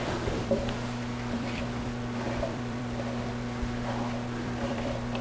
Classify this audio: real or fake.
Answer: fake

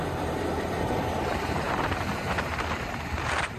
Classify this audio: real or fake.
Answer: fake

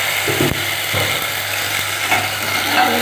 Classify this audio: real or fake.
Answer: real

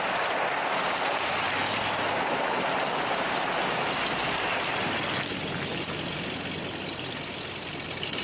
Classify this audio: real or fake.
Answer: real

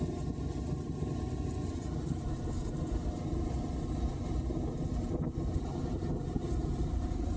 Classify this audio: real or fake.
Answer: real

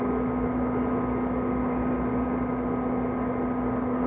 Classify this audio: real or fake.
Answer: real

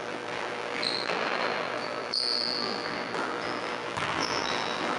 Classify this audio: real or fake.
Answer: fake